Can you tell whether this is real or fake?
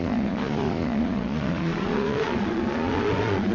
fake